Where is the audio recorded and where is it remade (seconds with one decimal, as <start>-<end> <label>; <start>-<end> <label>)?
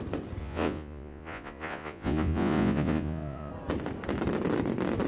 0.0-0.4 recorded; 0.4-3.5 remade; 3.5-5.1 recorded